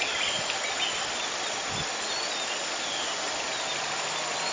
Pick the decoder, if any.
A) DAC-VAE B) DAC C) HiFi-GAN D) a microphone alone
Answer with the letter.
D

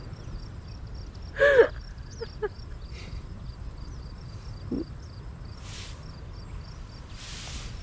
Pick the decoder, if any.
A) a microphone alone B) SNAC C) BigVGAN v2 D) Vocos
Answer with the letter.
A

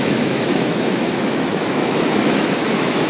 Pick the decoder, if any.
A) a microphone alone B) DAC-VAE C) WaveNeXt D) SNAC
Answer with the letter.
B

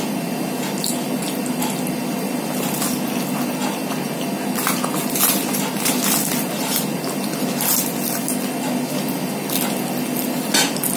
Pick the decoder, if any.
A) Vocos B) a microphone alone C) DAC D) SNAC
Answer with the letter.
B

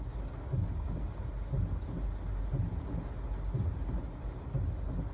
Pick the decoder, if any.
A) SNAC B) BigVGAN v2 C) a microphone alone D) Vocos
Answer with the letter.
C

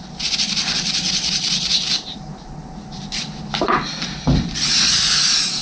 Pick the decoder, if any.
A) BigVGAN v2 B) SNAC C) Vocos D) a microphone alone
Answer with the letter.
D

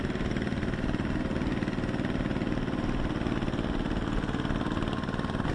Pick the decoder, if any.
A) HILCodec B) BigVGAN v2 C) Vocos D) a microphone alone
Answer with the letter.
D